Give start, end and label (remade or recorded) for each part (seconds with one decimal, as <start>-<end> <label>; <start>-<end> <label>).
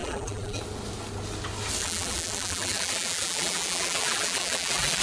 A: 0.0-0.6 remade; 0.6-1.8 recorded; 1.8-5.0 remade